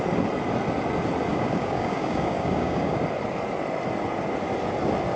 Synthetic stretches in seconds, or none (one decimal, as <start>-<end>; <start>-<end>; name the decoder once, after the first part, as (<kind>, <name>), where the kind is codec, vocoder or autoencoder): 1.3-3.0 (codec, DAC)